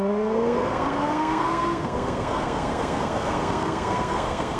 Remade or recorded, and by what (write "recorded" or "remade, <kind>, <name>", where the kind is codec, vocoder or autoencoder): remade, codec, SNAC